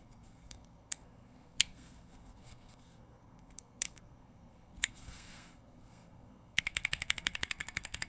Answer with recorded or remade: remade